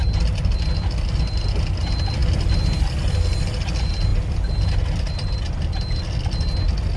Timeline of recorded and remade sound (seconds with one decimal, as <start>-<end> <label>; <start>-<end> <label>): 0.0-7.0 recorded